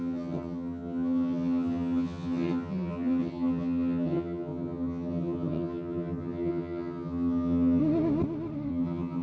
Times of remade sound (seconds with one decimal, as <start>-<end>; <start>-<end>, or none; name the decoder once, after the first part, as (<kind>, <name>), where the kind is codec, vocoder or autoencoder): 0.0-7.8 (vocoder, HiFi-GAN); 8.7-9.2